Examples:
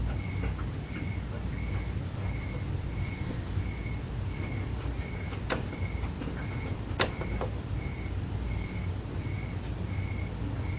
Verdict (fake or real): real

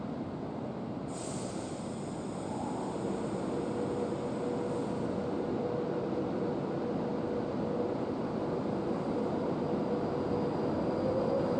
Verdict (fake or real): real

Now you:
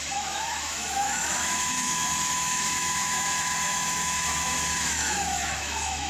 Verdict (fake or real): fake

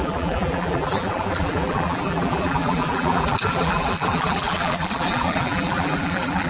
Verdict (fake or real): fake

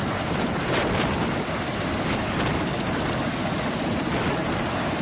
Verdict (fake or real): real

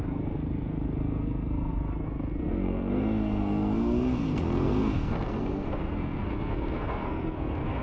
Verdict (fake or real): fake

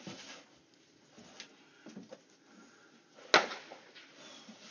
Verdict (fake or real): real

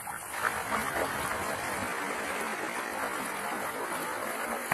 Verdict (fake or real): real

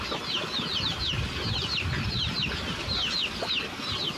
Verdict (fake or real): real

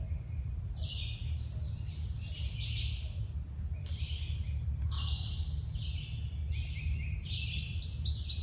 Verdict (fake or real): real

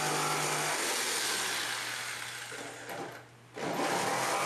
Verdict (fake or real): real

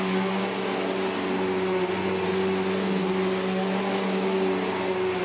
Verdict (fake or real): real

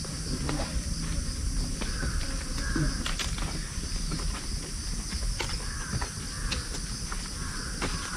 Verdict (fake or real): real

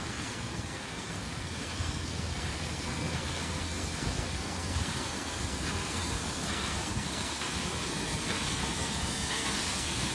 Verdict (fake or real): fake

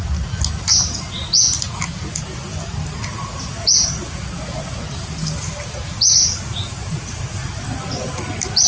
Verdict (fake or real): real